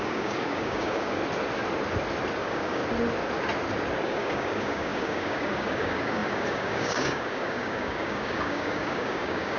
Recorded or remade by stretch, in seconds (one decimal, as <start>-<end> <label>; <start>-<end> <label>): 0.0-1.2 remade; 1.2-2.4 recorded; 2.4-2.8 remade; 2.8-4.0 recorded; 4.0-9.6 remade